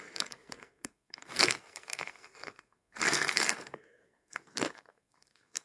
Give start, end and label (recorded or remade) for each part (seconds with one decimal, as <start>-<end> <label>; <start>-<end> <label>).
0.0-5.6 remade